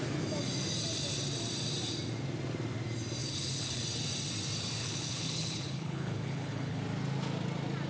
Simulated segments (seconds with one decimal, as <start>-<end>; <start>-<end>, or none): 3.2-3.8; 4.8-6.8